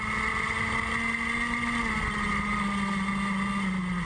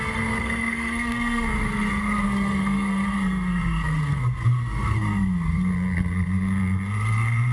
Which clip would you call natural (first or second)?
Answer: first